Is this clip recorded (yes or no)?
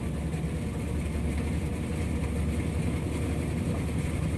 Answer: yes